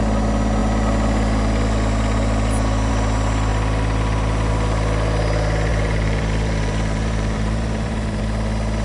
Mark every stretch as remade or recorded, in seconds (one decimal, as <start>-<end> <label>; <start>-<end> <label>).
0.0-5.7 recorded; 5.7-8.2 remade; 8.2-8.8 recorded